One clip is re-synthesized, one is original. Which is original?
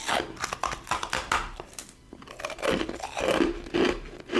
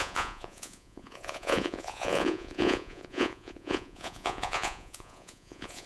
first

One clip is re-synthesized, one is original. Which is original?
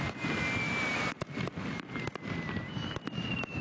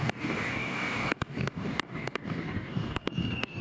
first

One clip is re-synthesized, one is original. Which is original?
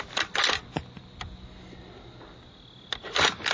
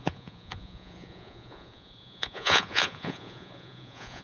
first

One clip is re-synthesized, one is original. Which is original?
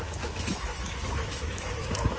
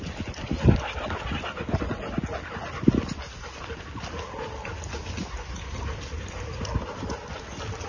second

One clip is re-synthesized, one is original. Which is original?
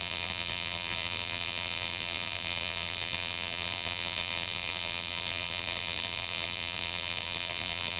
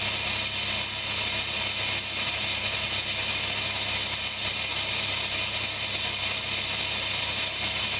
second